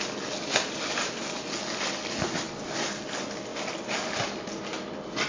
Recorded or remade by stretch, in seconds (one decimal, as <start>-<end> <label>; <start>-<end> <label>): 0.0-5.3 recorded